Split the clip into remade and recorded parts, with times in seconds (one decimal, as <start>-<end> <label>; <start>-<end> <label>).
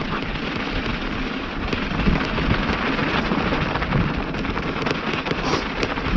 0.0-6.2 recorded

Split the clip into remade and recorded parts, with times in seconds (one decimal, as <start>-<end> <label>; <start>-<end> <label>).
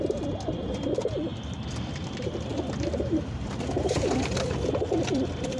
0.0-5.6 remade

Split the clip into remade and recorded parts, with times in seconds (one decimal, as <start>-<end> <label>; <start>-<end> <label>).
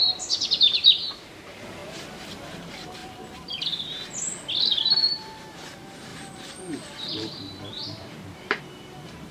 0.0-1.8 remade; 1.8-2.5 recorded; 2.5-3.0 remade; 3.0-4.8 recorded; 4.8-9.3 remade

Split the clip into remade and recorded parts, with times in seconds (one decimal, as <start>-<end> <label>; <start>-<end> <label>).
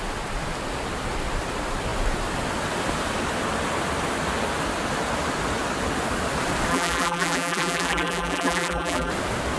0.0-6.7 recorded; 6.7-9.1 remade; 9.1-9.6 recorded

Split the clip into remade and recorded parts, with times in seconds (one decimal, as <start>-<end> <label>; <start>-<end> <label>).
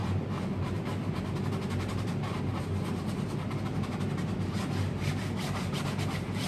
0.0-2.4 recorded; 2.4-6.5 remade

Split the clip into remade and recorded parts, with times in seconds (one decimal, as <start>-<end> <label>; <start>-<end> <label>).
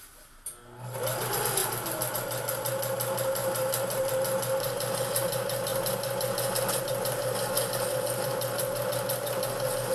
0.0-1.6 recorded; 1.6-2.1 remade; 2.1-3.4 recorded; 3.4-4.1 remade; 4.1-9.9 recorded